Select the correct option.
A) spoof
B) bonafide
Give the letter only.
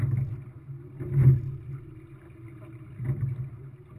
B